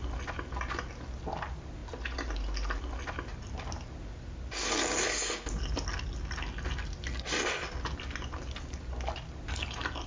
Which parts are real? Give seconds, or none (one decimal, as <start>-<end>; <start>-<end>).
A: 0.0-10.1